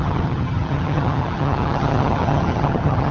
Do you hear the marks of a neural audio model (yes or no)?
yes